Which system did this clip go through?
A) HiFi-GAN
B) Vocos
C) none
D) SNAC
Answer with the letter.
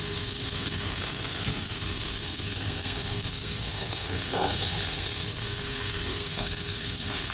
D